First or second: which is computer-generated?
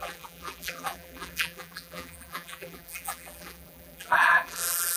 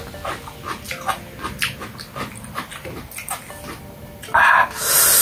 first